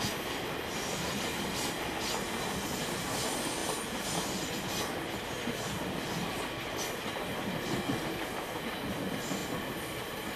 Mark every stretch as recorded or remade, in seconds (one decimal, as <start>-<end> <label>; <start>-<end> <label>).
0.0-10.4 recorded